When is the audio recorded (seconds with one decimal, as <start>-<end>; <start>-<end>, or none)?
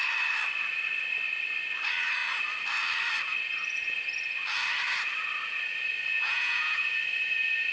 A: 0.0-6.1; 7.0-7.7